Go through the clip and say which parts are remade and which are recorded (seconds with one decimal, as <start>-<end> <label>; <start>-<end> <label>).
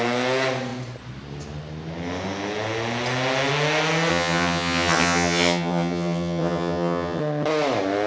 0.0-4.1 recorded; 4.1-7.2 remade; 7.2-8.1 recorded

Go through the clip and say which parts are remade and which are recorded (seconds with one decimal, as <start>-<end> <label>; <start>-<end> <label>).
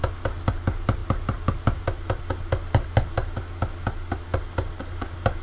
0.0-5.4 recorded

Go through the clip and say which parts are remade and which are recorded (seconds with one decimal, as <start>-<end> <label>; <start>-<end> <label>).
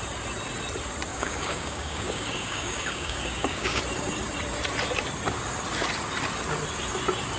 0.0-1.1 recorded; 1.1-3.8 remade; 3.8-7.4 recorded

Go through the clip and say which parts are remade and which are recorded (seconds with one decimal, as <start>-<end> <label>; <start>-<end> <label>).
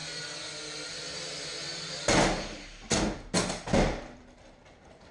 0.0-0.9 recorded; 0.9-1.7 remade; 1.7-3.5 recorded; 3.5-5.1 remade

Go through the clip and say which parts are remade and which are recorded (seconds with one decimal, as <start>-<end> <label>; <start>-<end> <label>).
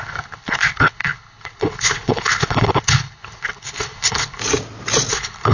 0.0-4.4 remade; 4.4-5.1 recorded; 5.1-5.5 remade